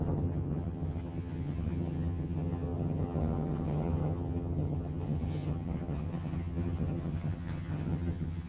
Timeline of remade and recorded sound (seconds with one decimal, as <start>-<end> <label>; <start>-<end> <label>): 0.0-8.5 remade